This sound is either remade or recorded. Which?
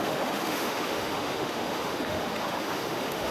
remade